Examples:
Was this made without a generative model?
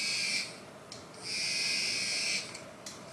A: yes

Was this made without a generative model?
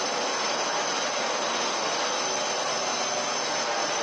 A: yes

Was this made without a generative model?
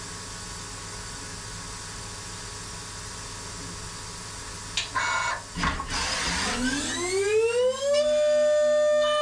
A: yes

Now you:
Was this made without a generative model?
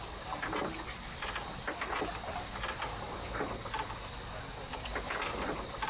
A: yes